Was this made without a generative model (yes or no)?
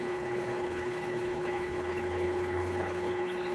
no